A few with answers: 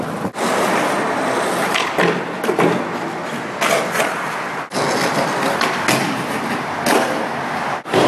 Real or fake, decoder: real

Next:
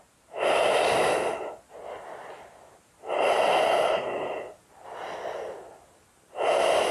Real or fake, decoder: real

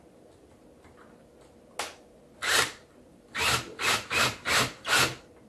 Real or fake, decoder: real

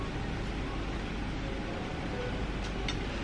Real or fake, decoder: real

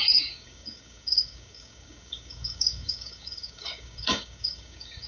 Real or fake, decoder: fake, codec, DAC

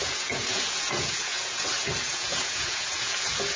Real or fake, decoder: fake, vocoder, Vocos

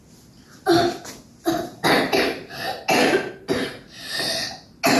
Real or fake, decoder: real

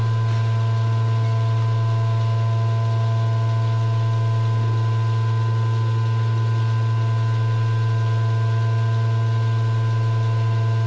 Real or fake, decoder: real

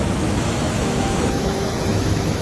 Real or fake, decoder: fake, autoencoder, DAC-VAE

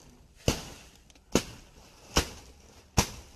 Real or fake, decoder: real